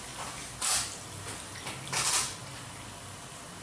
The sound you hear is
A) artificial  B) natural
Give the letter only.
B